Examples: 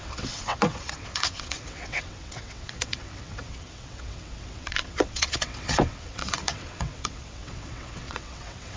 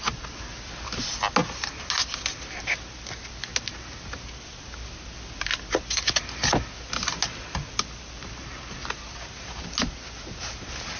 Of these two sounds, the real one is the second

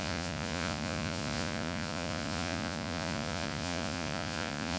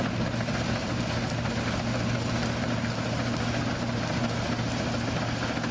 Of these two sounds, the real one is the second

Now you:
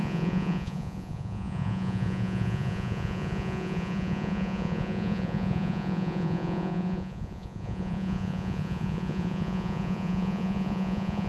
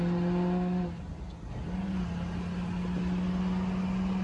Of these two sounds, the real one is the second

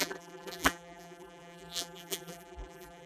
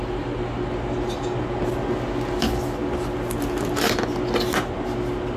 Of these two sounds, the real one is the second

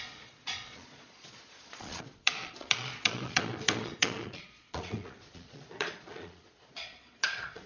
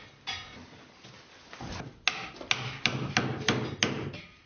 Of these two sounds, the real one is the second